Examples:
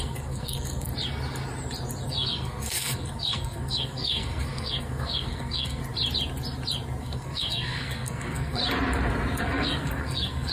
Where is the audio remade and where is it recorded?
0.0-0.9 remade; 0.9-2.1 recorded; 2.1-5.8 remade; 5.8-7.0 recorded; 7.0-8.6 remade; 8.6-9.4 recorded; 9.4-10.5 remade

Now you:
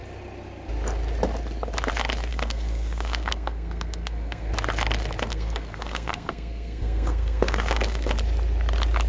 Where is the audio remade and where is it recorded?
0.0-2.3 recorded; 2.3-4.5 remade; 4.5-5.3 recorded; 5.3-8.1 remade; 8.1-9.1 recorded

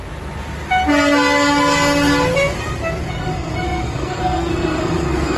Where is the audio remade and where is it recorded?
0.0-3.2 recorded; 3.2-5.4 remade

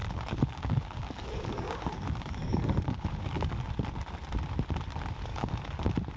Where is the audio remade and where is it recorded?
0.0-3.7 remade; 3.7-5.3 recorded; 5.3-5.8 remade; 5.8-6.2 recorded